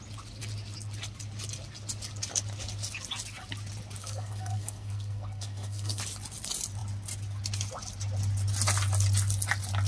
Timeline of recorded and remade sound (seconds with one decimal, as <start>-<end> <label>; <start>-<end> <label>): 0.0-4.0 recorded; 4.0-6.0 remade; 6.0-9.9 recorded